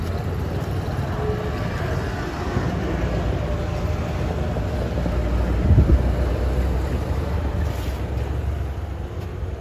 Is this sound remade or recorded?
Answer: recorded